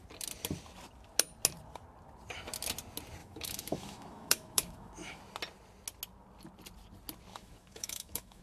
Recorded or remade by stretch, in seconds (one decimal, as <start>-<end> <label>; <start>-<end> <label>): 0.0-3.2 recorded; 3.2-5.2 remade; 5.2-7.3 recorded; 7.3-8.4 remade